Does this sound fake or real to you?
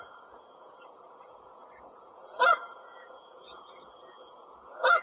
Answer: fake